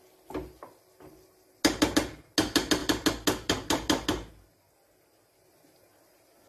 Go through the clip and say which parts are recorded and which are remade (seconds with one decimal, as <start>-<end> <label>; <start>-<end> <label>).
0.0-6.5 recorded